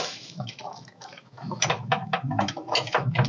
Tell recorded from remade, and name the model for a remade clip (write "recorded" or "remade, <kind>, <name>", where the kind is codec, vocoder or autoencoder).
remade, autoencoder, DAC-VAE